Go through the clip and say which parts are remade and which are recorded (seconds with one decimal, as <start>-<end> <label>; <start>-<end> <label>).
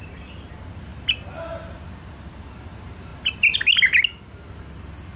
0.0-5.2 recorded